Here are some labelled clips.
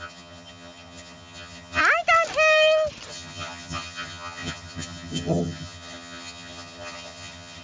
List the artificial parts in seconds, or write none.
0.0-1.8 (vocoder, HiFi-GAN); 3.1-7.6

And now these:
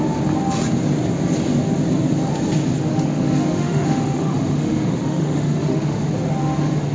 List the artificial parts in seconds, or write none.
2.9-6.1 (autoencoder, DAC-VAE)

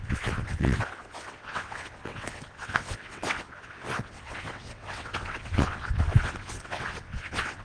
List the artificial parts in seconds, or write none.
0.0-7.6 (vocoder, WaveNeXt)

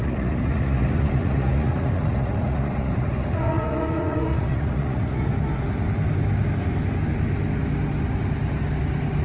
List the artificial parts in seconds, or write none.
0.0-5.3 (vocoder, Vocos)